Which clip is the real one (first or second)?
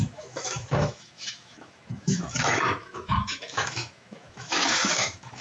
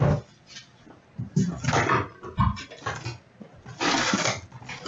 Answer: second